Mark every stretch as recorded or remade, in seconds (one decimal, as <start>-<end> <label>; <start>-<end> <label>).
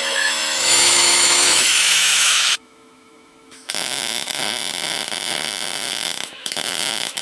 0.0-4.4 remade; 4.4-5.9 recorded; 5.9-7.2 remade